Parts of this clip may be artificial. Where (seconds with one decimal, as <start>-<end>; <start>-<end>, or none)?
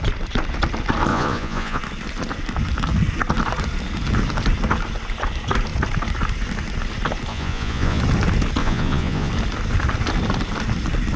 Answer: 1.1-1.8; 7.3-8.0; 8.6-9.3